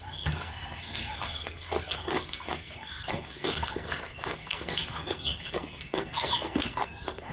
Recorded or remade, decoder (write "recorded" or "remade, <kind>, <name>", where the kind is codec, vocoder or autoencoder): remade, codec, SNAC